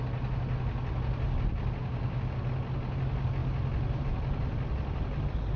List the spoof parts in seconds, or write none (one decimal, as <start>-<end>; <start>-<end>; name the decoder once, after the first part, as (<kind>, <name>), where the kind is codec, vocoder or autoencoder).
1.8-2.4 (codec, DAC)